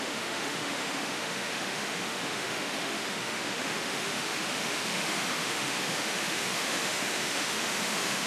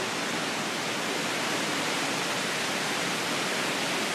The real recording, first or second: second